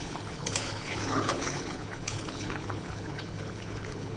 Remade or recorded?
remade